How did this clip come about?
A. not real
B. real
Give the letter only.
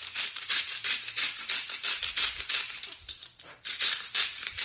A